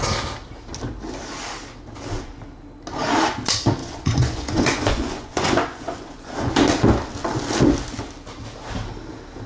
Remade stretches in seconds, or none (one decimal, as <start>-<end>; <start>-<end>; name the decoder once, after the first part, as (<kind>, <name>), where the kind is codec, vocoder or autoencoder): 3.8-6.5 (vocoder, Vocos)